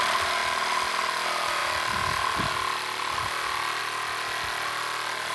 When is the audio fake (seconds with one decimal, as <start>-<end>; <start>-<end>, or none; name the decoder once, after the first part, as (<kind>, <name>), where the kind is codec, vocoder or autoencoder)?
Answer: none